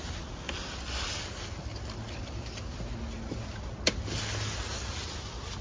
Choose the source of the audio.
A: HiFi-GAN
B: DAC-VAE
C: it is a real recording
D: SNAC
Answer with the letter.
C